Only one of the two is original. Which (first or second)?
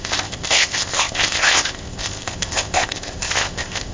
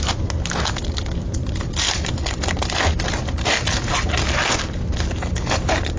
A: second